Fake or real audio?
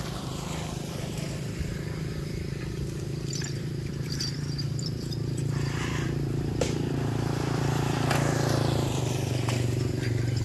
fake